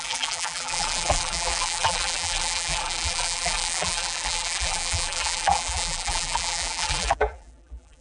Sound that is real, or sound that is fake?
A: fake